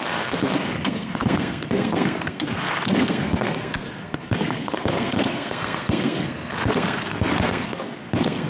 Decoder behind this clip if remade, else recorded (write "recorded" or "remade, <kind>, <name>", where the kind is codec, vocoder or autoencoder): remade, codec, SNAC